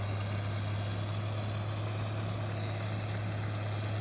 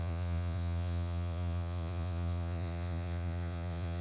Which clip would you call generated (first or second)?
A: second